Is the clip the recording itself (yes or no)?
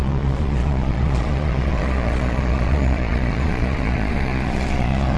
no